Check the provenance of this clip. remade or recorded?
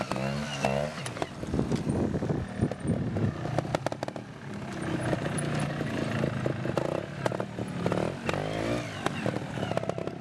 recorded